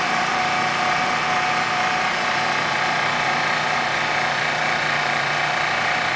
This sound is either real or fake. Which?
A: fake